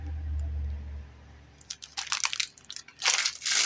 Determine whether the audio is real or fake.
real